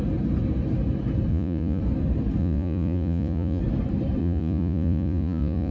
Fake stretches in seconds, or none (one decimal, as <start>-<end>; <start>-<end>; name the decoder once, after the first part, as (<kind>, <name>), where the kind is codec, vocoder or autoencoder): 1.3-1.8 (vocoder, Vocos); 2.4-3.6; 4.2-5.7